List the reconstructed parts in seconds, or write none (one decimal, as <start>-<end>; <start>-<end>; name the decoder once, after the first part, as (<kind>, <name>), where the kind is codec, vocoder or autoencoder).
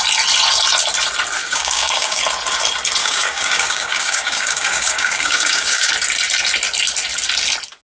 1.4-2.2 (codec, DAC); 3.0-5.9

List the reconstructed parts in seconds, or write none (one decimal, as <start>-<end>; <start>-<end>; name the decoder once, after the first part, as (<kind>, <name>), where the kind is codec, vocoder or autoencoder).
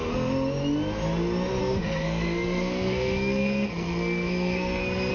1.6-5.1 (codec, SNAC)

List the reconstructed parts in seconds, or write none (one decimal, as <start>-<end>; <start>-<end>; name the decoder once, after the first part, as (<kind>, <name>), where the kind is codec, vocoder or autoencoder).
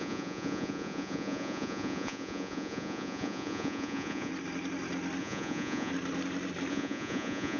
0.0-4.3 (vocoder, Vocos); 5.2-5.9; 6.7-7.6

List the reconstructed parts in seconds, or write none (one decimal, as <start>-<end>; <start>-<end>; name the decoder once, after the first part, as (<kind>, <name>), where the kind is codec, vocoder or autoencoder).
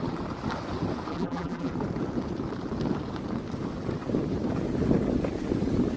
1.1-1.7 (vocoder, BigVGAN v2)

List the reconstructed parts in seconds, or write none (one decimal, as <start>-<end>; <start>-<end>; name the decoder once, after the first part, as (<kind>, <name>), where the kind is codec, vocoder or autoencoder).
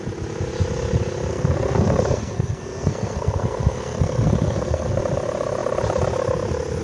1.3-5.0 (codec, SNAC)